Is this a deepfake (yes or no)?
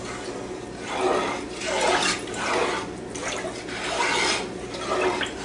no